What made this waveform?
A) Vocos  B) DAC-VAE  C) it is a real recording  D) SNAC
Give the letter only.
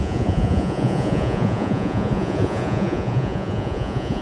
A